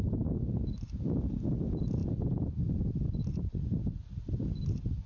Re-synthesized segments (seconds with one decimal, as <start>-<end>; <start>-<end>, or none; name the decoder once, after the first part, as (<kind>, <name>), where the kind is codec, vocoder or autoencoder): none